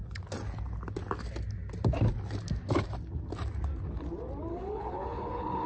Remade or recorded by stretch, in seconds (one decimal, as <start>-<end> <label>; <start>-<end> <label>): 0.0-4.5 recorded; 4.5-5.7 remade